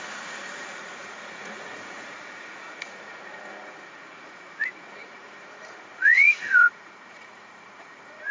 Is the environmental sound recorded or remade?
remade